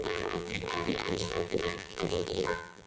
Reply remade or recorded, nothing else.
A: remade